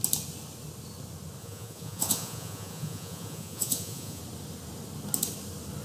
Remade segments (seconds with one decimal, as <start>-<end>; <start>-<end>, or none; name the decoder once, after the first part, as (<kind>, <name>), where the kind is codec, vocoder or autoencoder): 1.4-4.2 (vocoder, Vocos)